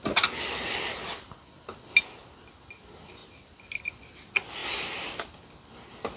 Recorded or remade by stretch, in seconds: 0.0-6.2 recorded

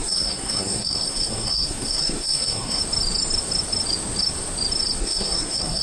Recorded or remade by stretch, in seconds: 0.0-2.8 remade; 2.8-5.0 recorded; 5.0-5.8 remade

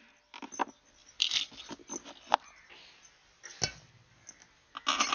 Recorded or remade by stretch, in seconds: 0.0-1.0 recorded; 1.0-1.7 remade; 1.7-5.1 recorded

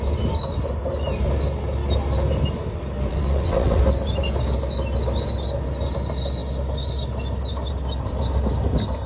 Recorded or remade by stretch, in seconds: 0.0-3.1 recorded; 3.1-3.8 remade; 3.8-9.1 recorded

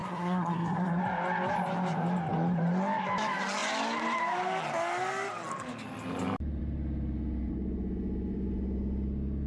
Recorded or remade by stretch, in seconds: 0.0-1.0 remade; 1.0-9.5 recorded

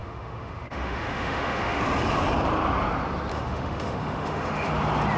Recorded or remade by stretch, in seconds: 0.0-1.8 remade; 1.8-3.3 recorded; 3.3-4.7 remade; 4.7-5.2 recorded

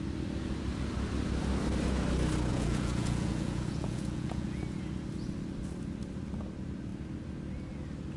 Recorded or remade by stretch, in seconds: 0.0-2.5 recorded; 2.5-4.6 remade; 4.6-8.2 recorded